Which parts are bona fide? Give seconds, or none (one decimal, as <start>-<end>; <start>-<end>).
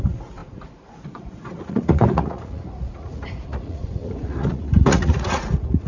none